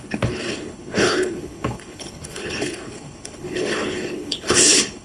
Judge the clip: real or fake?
fake